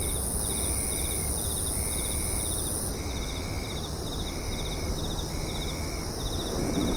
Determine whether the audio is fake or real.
real